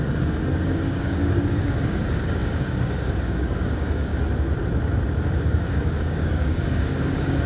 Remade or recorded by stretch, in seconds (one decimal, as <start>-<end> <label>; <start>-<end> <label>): 0.0-4.1 remade; 4.1-5.4 recorded; 5.4-7.5 remade